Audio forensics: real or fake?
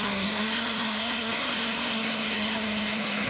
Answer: fake